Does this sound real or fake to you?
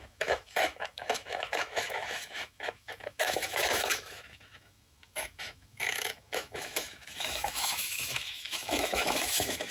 fake